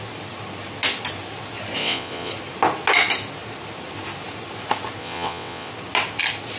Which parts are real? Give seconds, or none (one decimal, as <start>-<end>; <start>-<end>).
0.0-1.8; 2.3-5.0; 5.7-6.6